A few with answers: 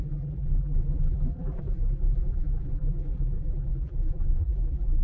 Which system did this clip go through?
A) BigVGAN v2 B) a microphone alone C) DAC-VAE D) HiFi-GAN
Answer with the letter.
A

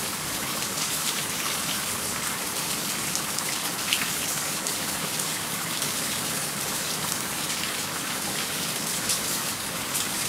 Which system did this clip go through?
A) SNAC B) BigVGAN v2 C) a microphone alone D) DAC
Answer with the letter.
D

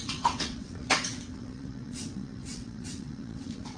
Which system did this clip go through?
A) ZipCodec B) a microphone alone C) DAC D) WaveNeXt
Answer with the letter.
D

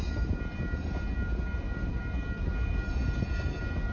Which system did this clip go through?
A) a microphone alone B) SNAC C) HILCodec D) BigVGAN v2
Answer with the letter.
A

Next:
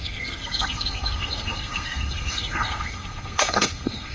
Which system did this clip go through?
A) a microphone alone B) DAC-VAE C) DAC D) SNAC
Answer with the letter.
D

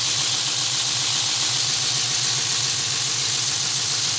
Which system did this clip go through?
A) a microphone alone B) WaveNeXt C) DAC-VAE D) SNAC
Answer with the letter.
A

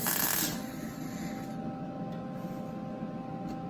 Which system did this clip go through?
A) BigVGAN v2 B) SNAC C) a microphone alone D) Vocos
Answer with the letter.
C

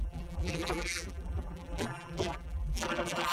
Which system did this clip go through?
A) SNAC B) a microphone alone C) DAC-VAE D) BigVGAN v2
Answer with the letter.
D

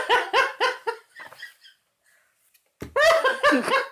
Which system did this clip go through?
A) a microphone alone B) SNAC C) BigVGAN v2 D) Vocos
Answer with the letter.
A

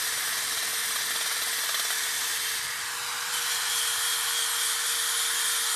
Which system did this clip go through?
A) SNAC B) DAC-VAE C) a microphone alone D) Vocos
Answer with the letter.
C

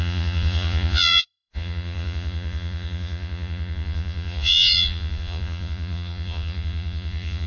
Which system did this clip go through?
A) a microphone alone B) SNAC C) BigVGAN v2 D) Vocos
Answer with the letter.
D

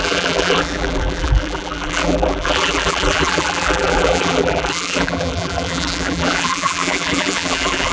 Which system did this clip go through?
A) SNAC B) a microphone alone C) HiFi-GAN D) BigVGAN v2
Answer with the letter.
D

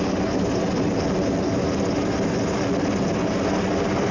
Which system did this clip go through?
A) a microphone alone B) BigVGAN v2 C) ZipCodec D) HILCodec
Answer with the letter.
A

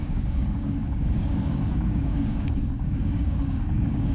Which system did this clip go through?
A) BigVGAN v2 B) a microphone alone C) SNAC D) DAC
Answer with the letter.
D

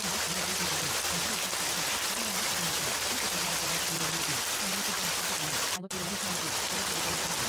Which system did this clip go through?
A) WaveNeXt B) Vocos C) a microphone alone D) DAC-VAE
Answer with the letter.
C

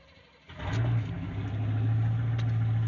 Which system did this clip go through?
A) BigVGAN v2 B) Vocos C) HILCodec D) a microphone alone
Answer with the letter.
D